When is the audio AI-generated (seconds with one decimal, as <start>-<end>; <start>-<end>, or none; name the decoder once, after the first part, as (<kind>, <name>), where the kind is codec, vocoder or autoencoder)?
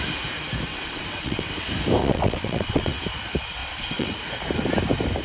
0.7-1.5 (vocoder, WaveNeXt); 2.0-3.0; 3.6-4.1